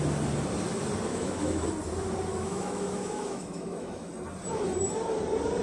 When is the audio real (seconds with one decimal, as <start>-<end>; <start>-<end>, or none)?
0.0-1.1; 1.7-2.3; 4.1-5.6